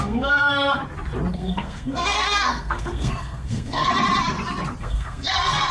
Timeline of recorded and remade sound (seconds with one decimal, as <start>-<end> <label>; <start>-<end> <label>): 0.0-0.8 remade; 0.8-1.3 recorded; 1.3-3.9 remade; 3.9-4.8 recorded; 4.8-5.7 remade